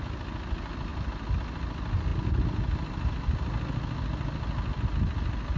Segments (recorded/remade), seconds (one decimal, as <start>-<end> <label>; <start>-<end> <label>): 0.0-5.6 recorded